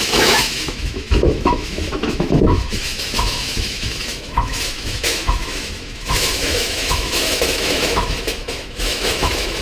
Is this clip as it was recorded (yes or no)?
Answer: no